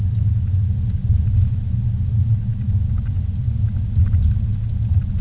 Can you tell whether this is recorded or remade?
recorded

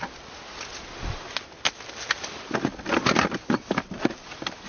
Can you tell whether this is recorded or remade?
recorded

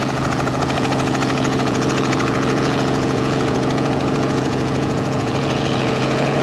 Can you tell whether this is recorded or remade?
remade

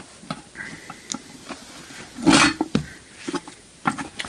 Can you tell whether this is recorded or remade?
recorded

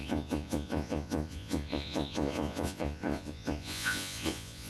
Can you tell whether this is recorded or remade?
remade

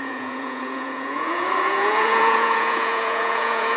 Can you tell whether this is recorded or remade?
remade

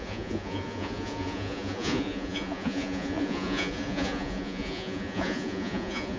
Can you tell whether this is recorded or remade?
remade